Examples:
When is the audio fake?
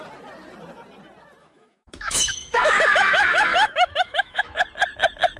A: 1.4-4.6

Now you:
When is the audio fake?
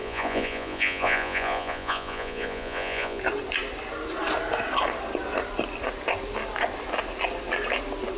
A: 0.0-3.2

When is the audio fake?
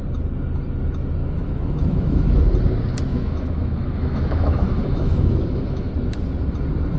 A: 1.2-2.4; 3.1-5.9